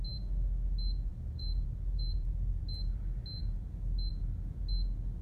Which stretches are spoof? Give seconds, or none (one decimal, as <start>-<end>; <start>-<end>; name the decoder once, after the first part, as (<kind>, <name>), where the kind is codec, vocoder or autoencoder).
1.1-2.6 (vocoder, BigVGAN v2)

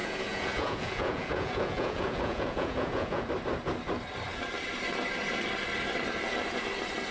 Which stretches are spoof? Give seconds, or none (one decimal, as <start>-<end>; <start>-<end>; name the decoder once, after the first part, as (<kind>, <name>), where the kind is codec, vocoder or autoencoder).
0.0-3.3 (vocoder, Vocos)

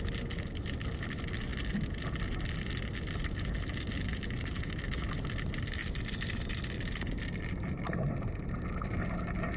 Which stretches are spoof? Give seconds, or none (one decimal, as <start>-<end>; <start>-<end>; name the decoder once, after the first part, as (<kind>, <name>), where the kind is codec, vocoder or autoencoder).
5.8-8.5 (vocoder, BigVGAN v2)

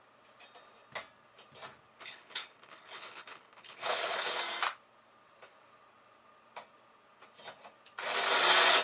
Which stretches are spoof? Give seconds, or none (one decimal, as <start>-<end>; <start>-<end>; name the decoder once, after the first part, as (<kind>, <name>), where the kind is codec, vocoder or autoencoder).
2.0-4.4 (codec, HILCodec)

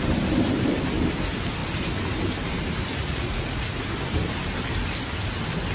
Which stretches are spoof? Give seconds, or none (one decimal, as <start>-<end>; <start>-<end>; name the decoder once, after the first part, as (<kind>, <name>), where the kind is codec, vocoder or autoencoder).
3.0-3.6 (vocoder, Vocos)

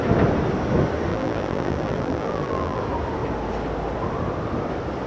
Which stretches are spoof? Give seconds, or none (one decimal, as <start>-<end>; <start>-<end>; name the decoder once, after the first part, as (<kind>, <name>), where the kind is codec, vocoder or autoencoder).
1.1-2.8 (vocoder, BigVGAN v2)